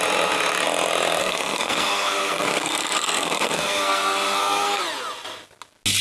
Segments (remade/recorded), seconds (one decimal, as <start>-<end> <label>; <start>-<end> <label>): 0.0-1.2 recorded; 1.2-4.8 remade; 4.8-6.0 recorded